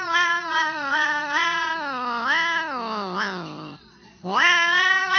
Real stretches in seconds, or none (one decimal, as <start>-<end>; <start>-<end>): 1.7-3.8